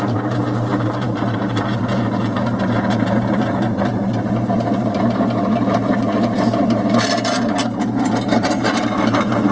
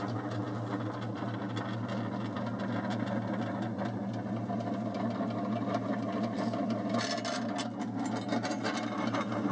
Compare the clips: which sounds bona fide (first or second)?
second